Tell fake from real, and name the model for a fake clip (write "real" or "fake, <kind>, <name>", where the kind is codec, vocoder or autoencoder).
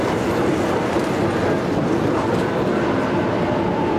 real